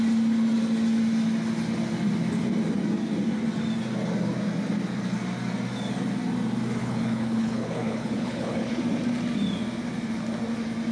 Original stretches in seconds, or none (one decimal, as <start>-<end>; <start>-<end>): 0.0-6.8; 8.8-10.9

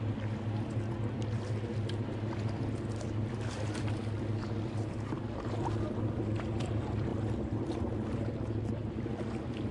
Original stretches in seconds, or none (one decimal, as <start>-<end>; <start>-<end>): 0.0-9.7

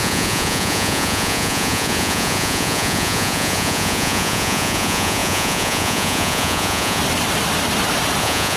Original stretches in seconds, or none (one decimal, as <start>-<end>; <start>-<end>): 7.0-8.2

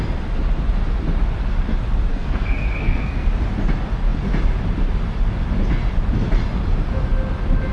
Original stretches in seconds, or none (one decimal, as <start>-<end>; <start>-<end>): 0.0-2.1; 3.3-7.7

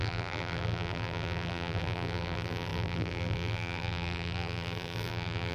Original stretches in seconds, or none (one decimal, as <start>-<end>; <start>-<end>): none

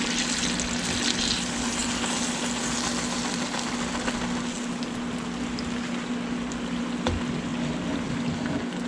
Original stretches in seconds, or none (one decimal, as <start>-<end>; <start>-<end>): 0.0-8.9

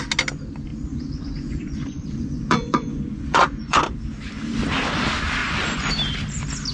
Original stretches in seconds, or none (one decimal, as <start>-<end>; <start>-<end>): 0.0-0.7; 3.8-5.4; 5.9-6.7

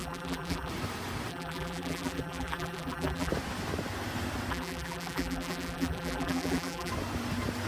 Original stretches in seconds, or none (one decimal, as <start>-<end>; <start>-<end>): 0.7-1.3; 3.3-4.5; 6.9-7.7